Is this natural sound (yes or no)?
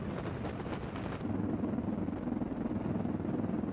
yes